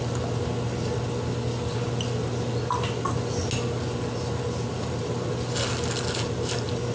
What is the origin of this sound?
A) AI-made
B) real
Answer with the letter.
B